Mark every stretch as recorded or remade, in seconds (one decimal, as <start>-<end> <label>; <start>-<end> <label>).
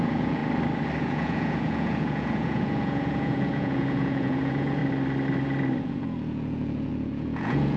0.0-0.4 remade; 0.4-1.0 recorded; 1.0-4.8 remade; 4.8-5.8 recorded; 5.8-7.8 remade